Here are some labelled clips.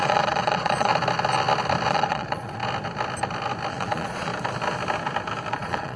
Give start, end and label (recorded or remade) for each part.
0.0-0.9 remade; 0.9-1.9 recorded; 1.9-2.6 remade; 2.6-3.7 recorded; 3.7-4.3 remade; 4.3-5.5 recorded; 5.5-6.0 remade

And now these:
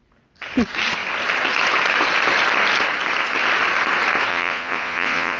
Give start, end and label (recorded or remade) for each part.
0.0-4.3 recorded; 4.3-5.4 remade